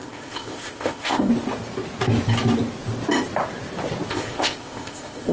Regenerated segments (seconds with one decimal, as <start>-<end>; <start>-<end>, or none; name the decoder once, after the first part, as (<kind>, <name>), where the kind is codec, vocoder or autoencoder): 0.0-1.3 (codec, ZipCodec); 4.1-5.3